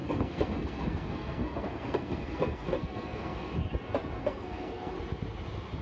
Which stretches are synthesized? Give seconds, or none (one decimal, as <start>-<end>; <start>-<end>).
0.0-3.5; 4.2-4.9